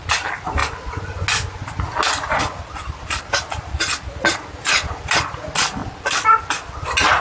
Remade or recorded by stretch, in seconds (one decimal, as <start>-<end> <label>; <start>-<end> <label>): 0.0-7.2 recorded